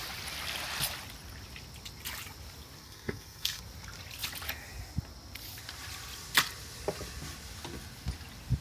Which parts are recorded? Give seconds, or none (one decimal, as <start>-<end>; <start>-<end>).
0.0-2.8; 3.6-8.6